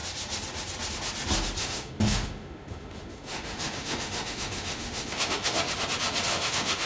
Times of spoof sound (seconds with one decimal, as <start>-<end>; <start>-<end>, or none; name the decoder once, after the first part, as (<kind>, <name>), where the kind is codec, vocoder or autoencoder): 1.6-5.6 (autoencoder, DAC-VAE); 6.3-6.9

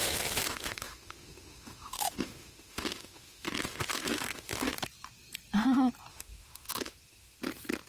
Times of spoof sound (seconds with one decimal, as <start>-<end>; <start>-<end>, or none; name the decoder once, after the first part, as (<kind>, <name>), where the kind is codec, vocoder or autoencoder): 0.0-4.7 (autoencoder, DAC-VAE); 6.1-7.4

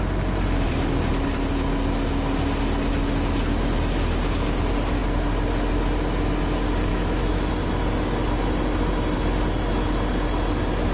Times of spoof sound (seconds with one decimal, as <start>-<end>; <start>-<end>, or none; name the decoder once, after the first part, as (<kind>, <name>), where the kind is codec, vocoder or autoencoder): 6.9-7.5 (autoencoder, DAC-VAE)

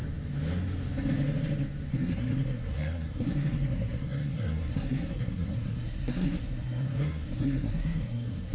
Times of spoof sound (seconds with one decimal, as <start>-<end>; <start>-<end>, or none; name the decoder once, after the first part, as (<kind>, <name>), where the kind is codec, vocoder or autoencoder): 1.9-8.5 (codec, SNAC)

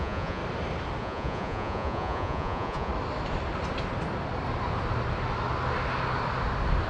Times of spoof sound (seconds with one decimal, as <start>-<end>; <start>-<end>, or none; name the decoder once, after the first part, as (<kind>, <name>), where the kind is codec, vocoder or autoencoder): 0.0-0.4 (vocoder, Vocos); 1.0-2.9

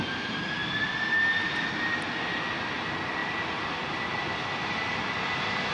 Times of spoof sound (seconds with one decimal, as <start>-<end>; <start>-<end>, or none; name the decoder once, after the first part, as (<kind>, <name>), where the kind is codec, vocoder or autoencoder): none